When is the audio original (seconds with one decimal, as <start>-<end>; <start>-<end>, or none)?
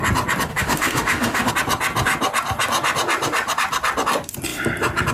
0.0-0.5; 1.5-5.1